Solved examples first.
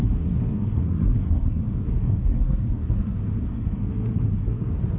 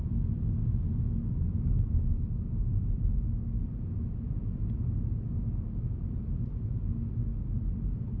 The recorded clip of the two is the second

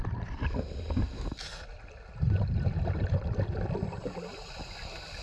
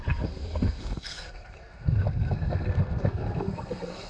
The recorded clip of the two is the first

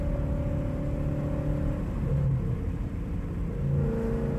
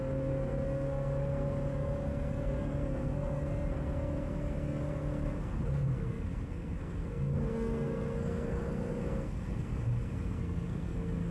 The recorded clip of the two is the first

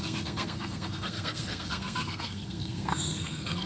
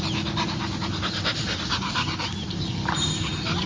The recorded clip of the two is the second